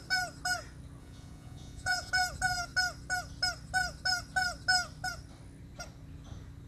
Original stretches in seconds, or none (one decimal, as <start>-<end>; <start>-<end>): 0.0-1.0; 2.1-6.7